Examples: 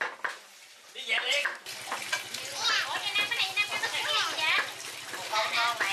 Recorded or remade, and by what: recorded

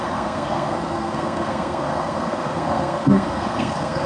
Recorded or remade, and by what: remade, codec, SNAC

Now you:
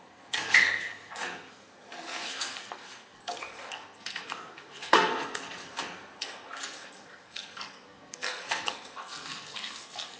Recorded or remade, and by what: remade, codec, SNAC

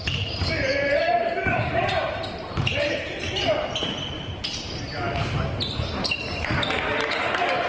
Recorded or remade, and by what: remade, vocoder, BigVGAN v2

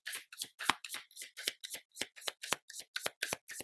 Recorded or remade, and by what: recorded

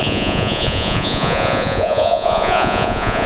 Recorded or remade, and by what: remade, vocoder, Vocos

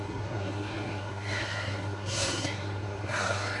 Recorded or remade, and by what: remade, codec, SNAC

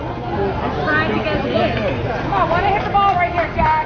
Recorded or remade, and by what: recorded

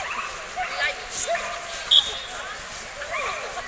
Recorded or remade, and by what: recorded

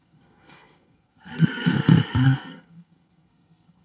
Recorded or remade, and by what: remade, codec, SNAC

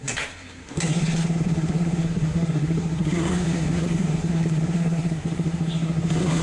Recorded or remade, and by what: remade, codec, SNAC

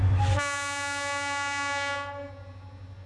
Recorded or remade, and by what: recorded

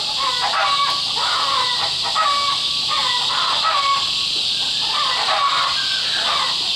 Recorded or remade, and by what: recorded